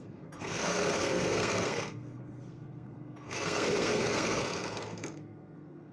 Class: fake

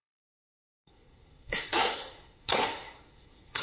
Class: fake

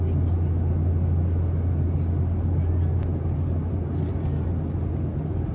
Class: real